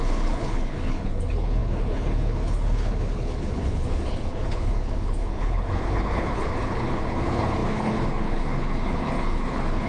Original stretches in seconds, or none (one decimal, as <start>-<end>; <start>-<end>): none